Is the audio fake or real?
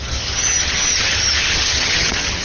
fake